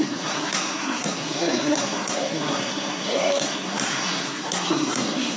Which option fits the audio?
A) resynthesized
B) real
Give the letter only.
A